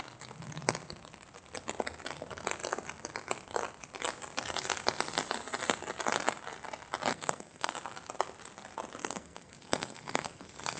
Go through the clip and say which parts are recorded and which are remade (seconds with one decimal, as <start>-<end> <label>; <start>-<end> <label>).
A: 0.0-7.1 recorded; 7.1-7.7 remade; 7.7-9.0 recorded; 9.0-10.8 remade